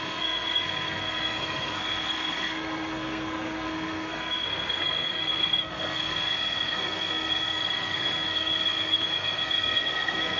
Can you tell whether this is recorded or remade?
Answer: remade